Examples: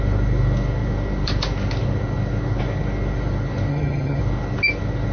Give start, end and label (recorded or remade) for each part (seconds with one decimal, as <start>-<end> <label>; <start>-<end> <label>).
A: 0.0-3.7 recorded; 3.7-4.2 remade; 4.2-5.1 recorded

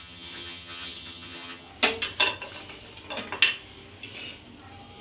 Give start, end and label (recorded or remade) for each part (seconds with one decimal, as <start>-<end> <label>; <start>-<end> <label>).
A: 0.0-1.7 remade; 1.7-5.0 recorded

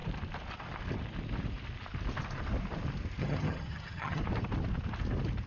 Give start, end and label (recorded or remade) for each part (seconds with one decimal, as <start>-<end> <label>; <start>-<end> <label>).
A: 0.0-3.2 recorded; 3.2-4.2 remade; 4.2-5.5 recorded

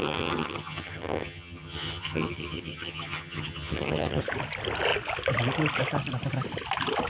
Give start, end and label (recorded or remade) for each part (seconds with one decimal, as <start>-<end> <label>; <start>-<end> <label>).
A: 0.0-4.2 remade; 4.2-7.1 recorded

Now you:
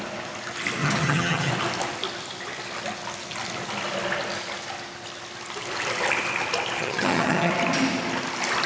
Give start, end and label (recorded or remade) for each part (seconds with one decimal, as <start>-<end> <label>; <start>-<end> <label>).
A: 0.0-0.8 recorded; 0.8-1.5 remade; 1.5-6.8 recorded; 6.8-7.5 remade; 7.5-8.7 recorded

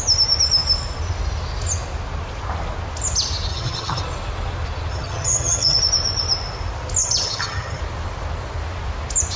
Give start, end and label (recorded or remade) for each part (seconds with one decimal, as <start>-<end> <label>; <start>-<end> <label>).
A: 0.0-3.5 recorded; 3.5-4.0 remade; 4.0-4.9 recorded; 4.9-5.8 remade; 5.8-7.0 recorded; 7.0-7.8 remade; 7.8-9.4 recorded

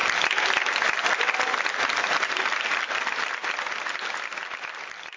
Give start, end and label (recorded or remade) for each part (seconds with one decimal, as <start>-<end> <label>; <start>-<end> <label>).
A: 0.0-5.2 recorded